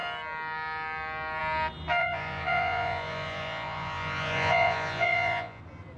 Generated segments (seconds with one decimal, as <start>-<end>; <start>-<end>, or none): 2.0-5.6